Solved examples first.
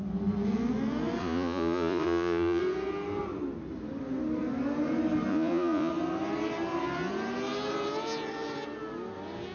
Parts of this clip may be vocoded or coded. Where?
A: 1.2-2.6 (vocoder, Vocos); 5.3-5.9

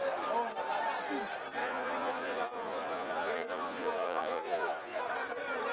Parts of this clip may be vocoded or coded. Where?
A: 1.6-5.0 (vocoder, Vocos)